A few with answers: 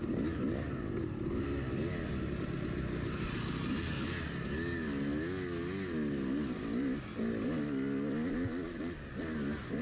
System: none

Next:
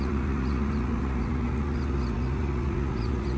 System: vocoder, Vocos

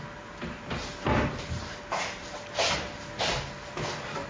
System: none